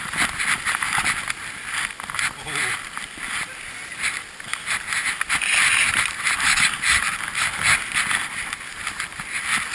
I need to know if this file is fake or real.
real